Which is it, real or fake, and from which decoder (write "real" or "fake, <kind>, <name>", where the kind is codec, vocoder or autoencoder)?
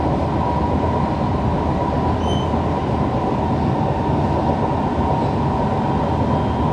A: real